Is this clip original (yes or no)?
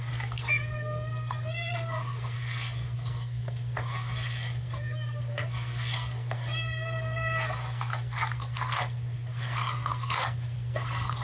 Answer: no